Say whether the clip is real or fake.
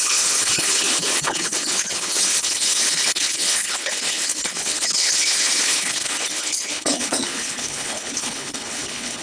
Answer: fake